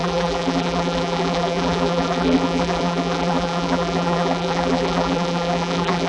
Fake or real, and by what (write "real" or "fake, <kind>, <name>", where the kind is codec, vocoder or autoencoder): fake, vocoder, BigVGAN v2